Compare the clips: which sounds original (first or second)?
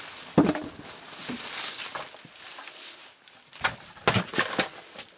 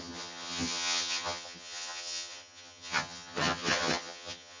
first